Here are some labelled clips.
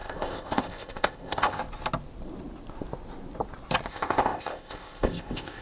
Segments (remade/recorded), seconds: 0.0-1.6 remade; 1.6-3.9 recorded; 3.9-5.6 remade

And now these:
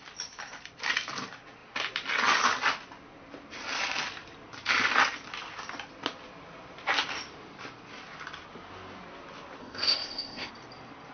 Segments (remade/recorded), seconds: 0.0-9.6 recorded; 9.6-10.5 remade; 10.5-11.1 recorded